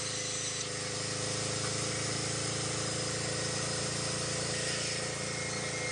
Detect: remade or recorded recorded